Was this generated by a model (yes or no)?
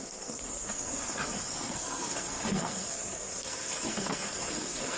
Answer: yes